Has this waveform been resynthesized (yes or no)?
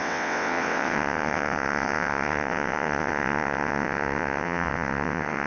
yes